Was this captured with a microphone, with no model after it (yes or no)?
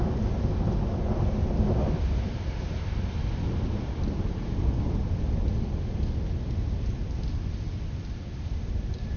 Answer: yes